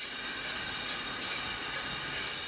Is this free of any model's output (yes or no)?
yes